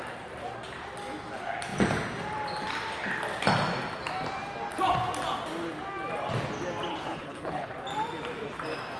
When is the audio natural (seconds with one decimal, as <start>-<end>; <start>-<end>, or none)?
0.0-6.9; 7.7-9.0

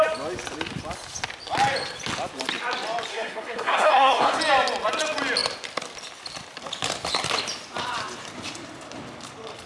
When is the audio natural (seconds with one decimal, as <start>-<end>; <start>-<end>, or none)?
0.0-3.1; 4.4-9.7

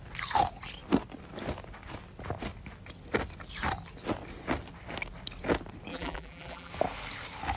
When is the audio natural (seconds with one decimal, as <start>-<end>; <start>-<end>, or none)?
0.0-5.9; 6.7-7.6

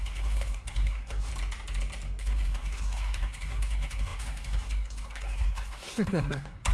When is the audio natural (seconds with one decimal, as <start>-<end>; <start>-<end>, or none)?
1.3-2.2

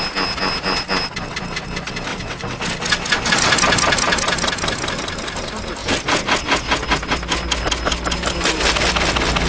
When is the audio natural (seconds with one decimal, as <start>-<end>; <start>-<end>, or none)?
0.0-2.1; 2.6-9.5